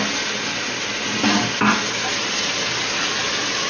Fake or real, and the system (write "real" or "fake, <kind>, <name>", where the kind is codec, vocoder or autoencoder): real